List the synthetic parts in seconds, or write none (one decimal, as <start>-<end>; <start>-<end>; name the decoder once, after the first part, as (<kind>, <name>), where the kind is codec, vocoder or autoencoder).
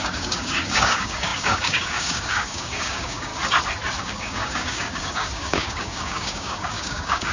0.0-3.3 (codec, DAC); 4.0-7.3